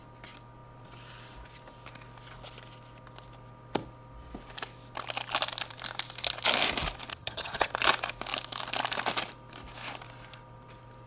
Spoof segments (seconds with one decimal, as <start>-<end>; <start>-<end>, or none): 7.1-7.7